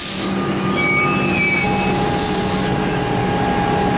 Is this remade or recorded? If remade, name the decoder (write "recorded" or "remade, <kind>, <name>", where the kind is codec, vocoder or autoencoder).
recorded